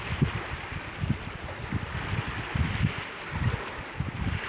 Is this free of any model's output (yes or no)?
yes